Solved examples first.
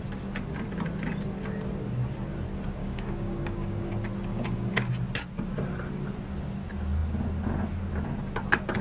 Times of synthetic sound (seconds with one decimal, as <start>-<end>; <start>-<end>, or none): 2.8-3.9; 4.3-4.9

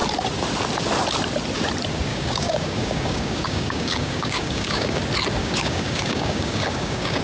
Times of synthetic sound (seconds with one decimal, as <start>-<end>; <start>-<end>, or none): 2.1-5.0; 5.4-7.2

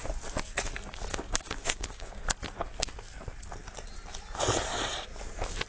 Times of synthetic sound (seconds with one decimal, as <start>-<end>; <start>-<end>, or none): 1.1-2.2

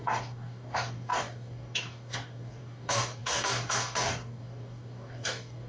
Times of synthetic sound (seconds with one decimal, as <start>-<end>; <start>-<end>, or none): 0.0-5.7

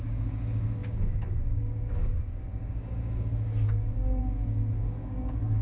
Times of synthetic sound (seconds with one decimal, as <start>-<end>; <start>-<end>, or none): 0.0-5.6

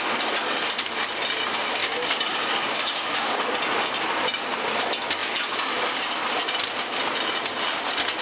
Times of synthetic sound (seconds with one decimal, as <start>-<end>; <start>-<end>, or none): 1.8-3.4

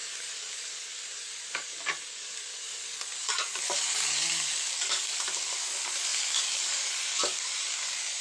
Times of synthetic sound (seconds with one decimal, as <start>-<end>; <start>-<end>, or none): 0.0-8.2